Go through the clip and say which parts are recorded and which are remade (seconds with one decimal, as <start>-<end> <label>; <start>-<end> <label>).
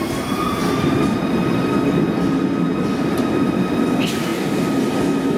0.0-5.4 recorded